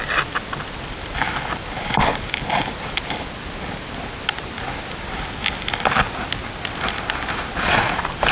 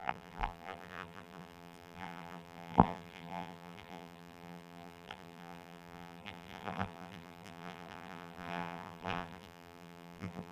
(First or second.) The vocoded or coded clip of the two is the second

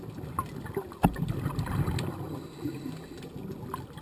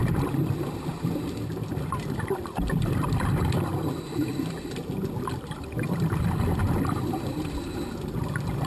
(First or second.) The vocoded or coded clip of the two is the second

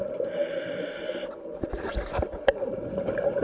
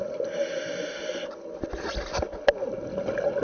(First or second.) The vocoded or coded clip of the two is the first